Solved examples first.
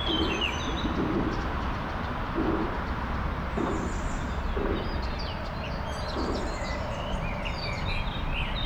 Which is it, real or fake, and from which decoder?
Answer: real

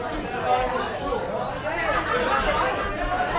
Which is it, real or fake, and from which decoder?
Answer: real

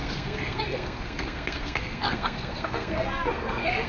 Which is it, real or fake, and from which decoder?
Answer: fake, codec, SNAC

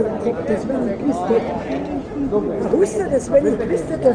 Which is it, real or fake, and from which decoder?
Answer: real